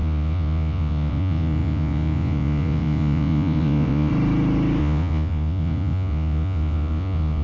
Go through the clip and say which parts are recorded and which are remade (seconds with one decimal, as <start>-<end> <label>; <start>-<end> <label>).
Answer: 0.0-4.1 remade; 4.1-4.8 recorded; 4.8-7.4 remade